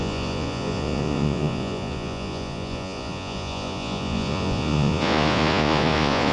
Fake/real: fake